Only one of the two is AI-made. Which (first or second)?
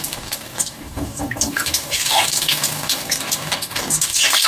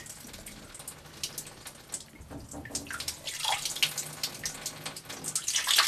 first